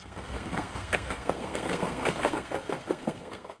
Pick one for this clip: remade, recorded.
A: remade